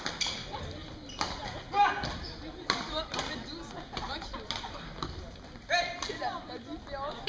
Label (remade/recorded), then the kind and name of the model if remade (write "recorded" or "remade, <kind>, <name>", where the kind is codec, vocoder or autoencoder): recorded